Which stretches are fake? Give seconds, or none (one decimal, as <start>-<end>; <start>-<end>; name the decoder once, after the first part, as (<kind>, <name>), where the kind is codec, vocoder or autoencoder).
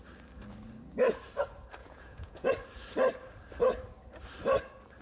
1.8-2.5 (vocoder, Vocos)